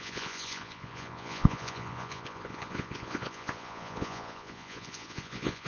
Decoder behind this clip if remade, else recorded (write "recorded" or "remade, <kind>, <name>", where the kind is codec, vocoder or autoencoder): remade, vocoder, Vocos